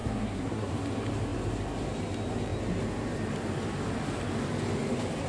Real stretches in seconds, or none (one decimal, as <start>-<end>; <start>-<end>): 0.7-5.3